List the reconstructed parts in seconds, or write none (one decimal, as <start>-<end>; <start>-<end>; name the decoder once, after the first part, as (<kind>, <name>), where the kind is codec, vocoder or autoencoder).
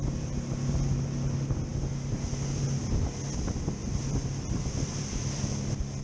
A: 0.0-0.7 (vocoder, BigVGAN v2); 3.8-5.4